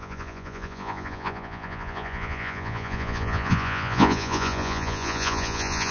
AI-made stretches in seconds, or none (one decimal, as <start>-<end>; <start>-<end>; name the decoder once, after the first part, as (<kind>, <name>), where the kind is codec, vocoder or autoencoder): 0.0-5.9 (vocoder, Vocos)

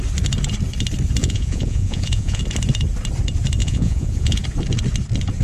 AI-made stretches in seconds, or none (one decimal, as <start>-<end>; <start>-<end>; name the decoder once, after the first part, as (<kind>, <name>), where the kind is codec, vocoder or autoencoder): 1.2-2.4 (vocoder, Vocos); 3.6-4.4

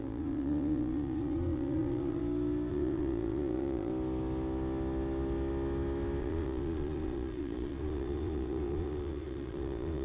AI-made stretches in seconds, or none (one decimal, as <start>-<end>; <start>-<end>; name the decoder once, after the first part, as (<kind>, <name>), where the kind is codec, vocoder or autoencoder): 0.0-2.2 (vocoder, Vocos); 2.7-3.9; 6.2-10.0

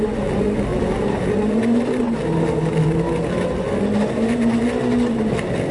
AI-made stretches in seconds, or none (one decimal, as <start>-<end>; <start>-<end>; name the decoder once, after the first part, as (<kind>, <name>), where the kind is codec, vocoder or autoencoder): none